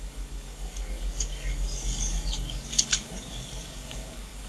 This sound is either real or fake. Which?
fake